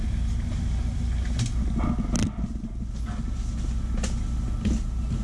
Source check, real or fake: real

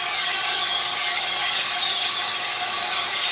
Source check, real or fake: fake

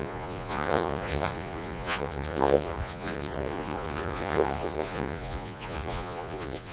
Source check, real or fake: fake